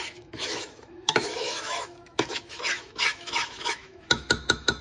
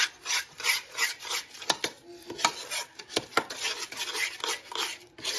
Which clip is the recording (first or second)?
second